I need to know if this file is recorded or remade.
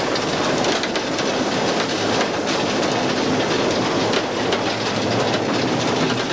recorded